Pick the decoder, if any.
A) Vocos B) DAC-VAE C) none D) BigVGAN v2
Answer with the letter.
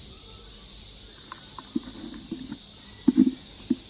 C